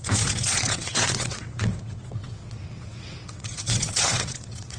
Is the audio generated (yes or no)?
yes